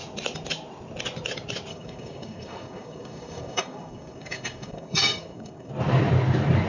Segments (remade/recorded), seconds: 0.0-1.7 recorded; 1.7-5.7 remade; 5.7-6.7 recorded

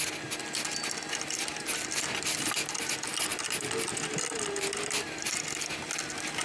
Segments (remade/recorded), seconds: 0.0-6.4 recorded

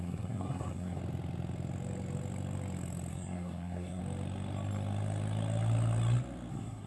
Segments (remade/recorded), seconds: 0.0-1.0 remade; 1.0-3.1 recorded; 3.1-4.0 remade; 4.0-6.5 recorded; 6.5-6.9 remade

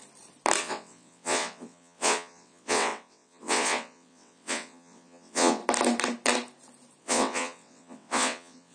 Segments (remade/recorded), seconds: 0.0-0.6 recorded; 0.6-5.6 remade; 5.6-7.0 recorded; 7.0-8.7 remade

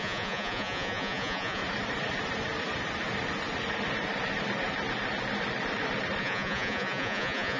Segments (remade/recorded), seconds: 0.0-1.6 remade; 1.6-6.2 recorded; 6.2-7.6 remade

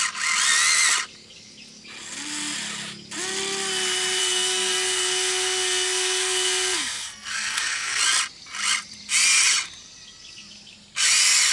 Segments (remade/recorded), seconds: 0.0-4.2 recorded; 4.2-8.0 remade; 8.0-11.5 recorded